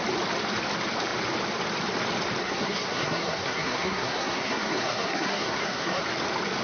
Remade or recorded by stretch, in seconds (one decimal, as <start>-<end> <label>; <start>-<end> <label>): 0.0-2.4 recorded; 2.4-6.0 remade; 6.0-6.6 recorded